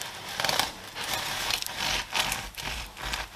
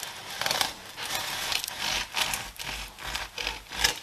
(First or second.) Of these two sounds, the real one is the second